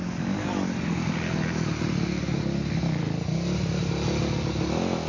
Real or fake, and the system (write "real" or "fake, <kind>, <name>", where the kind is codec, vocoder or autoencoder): real